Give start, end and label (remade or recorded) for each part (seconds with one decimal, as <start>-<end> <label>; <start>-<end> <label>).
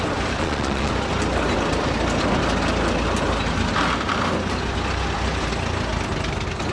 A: 0.0-0.4 recorded; 0.4-0.9 remade; 0.9-6.7 recorded